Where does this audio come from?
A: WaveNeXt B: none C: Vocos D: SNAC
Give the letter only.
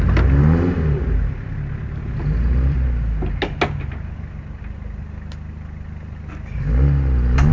B